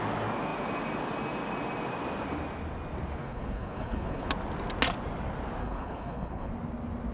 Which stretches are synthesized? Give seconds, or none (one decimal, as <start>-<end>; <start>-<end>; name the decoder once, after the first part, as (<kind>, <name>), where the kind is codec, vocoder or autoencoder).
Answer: 3.2-4.3 (codec, HILCodec); 5.6-6.5